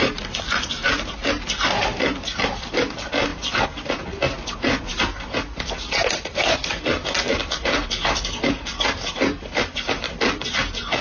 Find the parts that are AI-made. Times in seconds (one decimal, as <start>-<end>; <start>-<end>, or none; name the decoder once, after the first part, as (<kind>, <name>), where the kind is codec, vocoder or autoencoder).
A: none